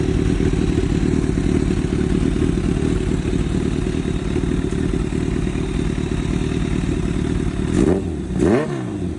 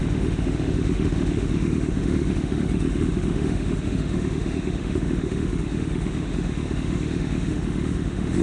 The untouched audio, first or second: first